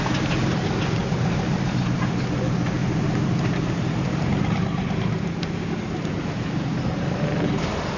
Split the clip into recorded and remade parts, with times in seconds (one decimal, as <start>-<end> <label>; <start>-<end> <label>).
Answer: 0.0-1.0 recorded; 1.0-2.2 remade; 2.2-2.8 recorded; 2.8-7.5 remade; 7.5-8.0 recorded